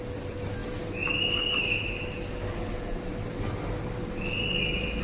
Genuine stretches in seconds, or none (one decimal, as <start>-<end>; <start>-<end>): 0.0-5.0